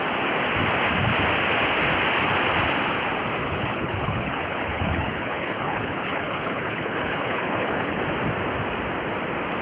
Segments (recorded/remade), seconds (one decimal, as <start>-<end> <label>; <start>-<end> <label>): 0.0-3.4 recorded; 3.4-8.0 remade; 8.0-9.6 recorded